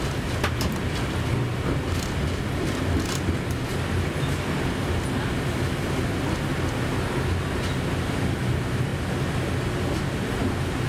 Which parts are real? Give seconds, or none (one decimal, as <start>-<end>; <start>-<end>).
0.0-10.9